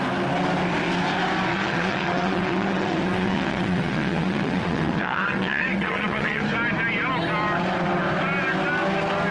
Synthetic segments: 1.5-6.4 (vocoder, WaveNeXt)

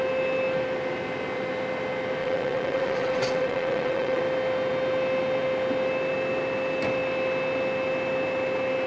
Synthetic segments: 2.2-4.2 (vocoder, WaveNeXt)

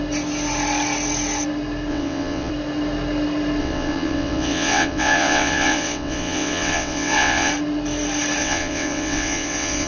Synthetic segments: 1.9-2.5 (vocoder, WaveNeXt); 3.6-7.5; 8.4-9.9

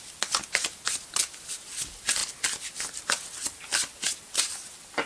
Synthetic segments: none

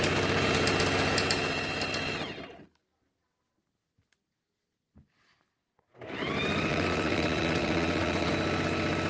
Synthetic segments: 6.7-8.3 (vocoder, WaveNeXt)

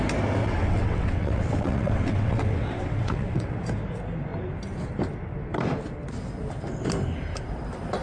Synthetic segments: 0.4-3.6 (vocoder, WaveNeXt)

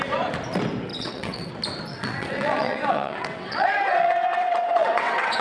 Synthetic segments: 0.9-1.5 (vocoder, WaveNeXt); 1.9-5.4